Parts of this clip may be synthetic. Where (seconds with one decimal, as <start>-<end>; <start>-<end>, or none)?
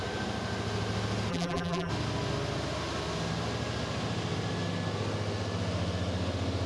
1.3-1.9